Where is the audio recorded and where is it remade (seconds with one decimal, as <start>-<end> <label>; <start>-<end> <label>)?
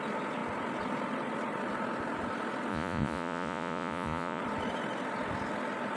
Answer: 0.0-2.7 recorded; 2.7-4.4 remade; 4.4-6.0 recorded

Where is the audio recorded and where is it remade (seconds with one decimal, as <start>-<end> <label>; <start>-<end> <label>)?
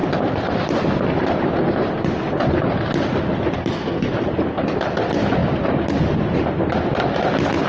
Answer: 0.0-3.6 recorded; 3.6-4.1 remade; 4.1-7.7 recorded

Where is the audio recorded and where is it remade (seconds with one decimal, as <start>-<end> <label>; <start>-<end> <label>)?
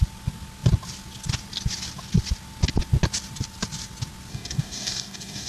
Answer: 0.0-4.3 recorded; 4.3-5.5 remade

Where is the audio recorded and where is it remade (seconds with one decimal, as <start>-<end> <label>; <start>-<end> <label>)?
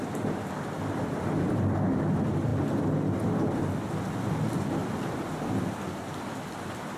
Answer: 0.0-7.0 recorded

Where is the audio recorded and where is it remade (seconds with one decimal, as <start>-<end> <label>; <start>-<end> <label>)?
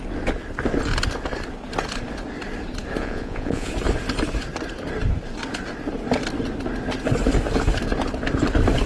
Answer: 0.0-3.0 recorded; 3.0-3.7 remade; 3.7-8.9 recorded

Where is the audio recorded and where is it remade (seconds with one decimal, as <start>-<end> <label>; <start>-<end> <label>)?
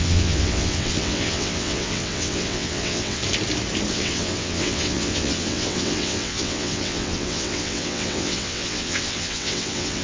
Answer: 0.0-3.2 remade; 3.2-3.9 recorded; 3.9-10.0 remade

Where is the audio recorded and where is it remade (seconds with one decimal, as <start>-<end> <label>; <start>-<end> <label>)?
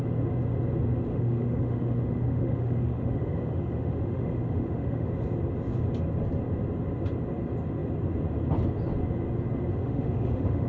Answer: 0.0-1.1 recorded; 1.1-5.1 remade; 5.1-9.8 recorded; 9.8-10.7 remade